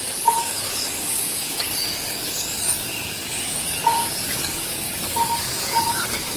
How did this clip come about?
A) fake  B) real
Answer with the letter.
A